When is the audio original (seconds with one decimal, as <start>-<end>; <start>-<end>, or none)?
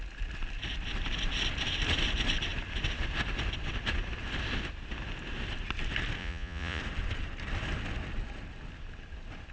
0.0-6.2; 6.8-9.5